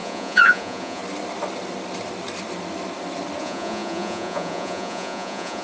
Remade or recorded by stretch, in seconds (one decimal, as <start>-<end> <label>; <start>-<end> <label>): 0.0-1.0 remade; 1.0-3.4 recorded; 3.4-5.6 remade